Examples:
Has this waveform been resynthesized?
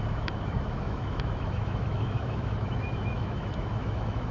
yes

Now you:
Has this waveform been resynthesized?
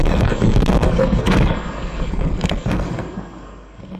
yes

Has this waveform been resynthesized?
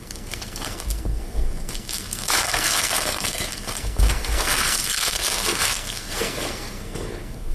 yes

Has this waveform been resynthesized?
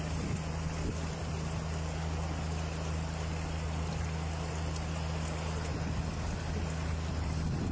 no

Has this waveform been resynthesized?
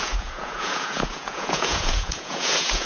yes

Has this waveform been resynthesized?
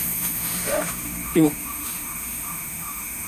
yes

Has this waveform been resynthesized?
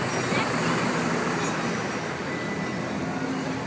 no